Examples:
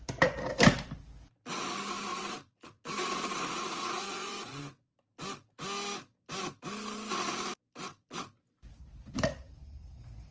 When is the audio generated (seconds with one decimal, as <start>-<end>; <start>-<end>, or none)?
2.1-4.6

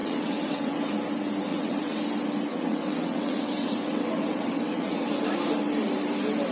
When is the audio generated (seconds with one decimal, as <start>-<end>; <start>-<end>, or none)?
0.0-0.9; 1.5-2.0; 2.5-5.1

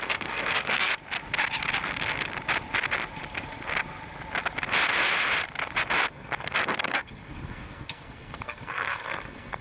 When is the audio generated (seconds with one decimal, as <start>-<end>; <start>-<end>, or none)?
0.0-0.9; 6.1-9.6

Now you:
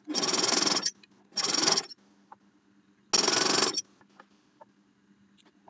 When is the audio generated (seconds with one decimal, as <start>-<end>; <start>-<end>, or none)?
none

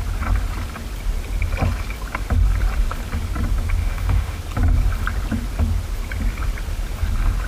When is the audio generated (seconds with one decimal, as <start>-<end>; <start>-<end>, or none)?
3.8-4.4

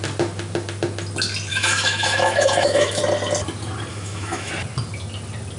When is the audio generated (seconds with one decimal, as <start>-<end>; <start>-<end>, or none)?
1.5-3.0; 3.9-4.5